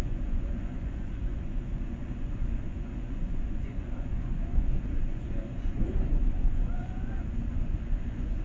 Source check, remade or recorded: remade